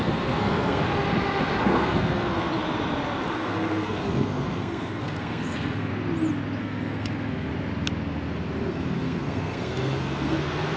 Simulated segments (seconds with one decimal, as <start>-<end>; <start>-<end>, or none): 0.0-0.8; 1.6-2.5; 3.3-5.9; 6.6-7.5; 8.7-10.8